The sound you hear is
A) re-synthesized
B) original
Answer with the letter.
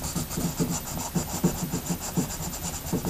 A